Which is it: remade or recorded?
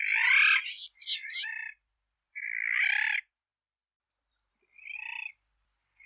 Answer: recorded